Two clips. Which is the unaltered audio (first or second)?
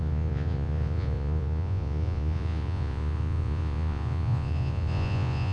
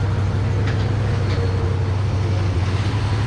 second